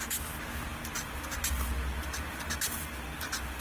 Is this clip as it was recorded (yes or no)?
yes